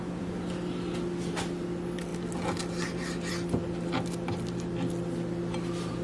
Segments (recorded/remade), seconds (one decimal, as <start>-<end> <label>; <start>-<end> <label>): 0.0-6.0 recorded